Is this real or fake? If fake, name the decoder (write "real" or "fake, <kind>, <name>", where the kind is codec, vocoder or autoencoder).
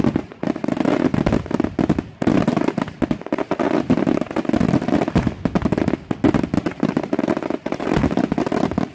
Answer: real